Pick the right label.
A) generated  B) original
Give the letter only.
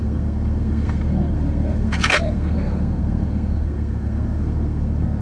A